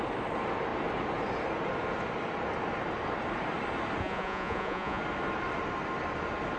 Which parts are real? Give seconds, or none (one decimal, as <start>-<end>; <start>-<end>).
0.0-4.0; 5.0-6.6